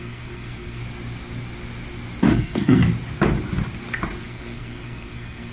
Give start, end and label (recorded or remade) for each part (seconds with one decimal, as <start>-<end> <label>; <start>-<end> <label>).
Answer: 0.0-0.8 remade; 0.8-2.3 recorded; 2.3-2.8 remade; 2.8-4.2 recorded; 4.2-5.5 remade